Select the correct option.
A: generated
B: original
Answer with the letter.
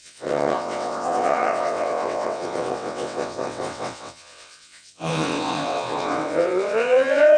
A